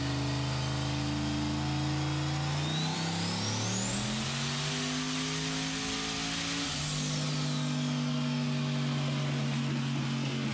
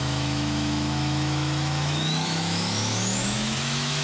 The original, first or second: first